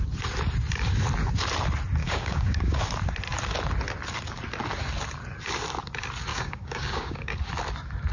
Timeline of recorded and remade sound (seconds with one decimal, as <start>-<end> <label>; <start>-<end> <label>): 0.0-2.0 recorded; 2.0-2.8 remade; 2.8-6.3 recorded; 6.3-7.4 remade; 7.4-8.1 recorded